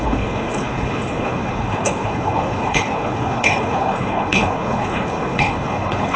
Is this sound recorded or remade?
remade